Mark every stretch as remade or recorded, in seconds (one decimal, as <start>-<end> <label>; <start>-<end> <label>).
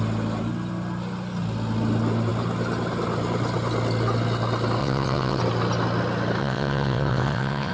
0.0-4.8 recorded; 4.8-5.4 remade; 5.4-6.4 recorded; 6.4-7.7 remade